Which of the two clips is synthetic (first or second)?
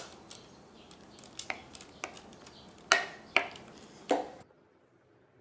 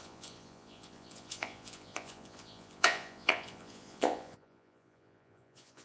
second